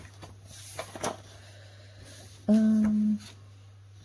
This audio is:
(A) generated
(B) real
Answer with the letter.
B